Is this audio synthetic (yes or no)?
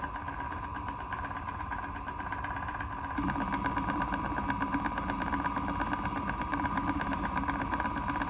yes